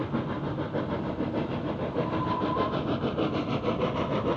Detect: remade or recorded recorded